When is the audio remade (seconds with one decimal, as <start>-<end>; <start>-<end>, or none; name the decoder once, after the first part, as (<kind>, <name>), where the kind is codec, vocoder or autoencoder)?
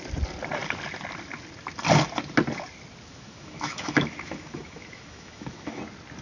3.1-5.8 (autoencoder, DAC-VAE)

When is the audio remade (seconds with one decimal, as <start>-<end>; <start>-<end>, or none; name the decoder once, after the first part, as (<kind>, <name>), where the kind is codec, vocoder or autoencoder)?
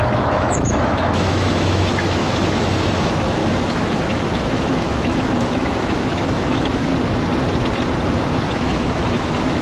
0.0-6.9 (autoencoder, DAC-VAE); 8.5-9.6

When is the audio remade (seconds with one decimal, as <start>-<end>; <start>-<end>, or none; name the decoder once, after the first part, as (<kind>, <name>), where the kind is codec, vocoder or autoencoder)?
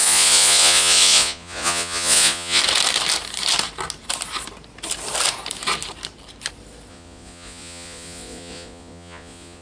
0.0-2.6 (vocoder, Vocos); 6.9-9.6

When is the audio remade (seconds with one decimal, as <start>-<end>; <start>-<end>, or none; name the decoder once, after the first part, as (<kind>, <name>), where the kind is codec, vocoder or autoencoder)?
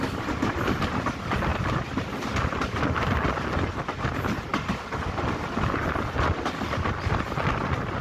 none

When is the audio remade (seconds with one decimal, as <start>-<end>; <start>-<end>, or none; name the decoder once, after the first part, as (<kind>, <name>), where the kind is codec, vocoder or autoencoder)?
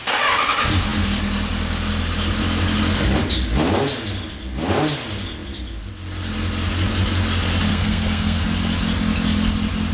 7.7-8.4 (codec, SNAC)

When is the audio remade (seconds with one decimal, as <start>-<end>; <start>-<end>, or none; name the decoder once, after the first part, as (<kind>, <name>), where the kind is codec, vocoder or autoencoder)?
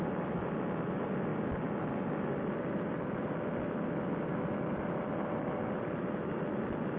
none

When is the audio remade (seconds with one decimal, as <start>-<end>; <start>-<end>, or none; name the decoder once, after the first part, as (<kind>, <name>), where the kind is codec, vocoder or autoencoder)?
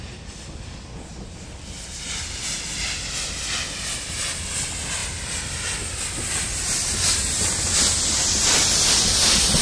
none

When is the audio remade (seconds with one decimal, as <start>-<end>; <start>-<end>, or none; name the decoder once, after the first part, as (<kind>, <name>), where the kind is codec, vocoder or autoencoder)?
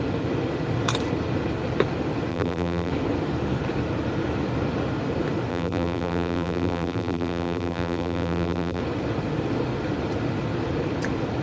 2.3-2.9 (vocoder, BigVGAN v2); 5.5-8.8